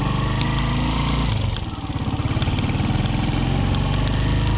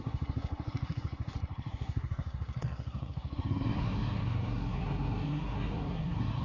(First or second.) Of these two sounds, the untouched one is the first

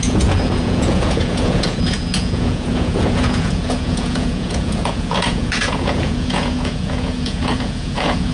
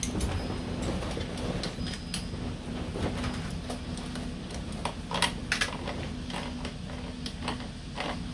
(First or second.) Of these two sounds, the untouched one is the second